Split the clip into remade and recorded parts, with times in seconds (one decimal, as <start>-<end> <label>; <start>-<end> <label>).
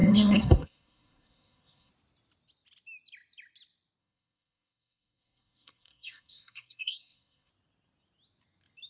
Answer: 0.0-1.9 remade; 1.9-4.0 recorded; 4.0-7.5 remade; 7.5-8.9 recorded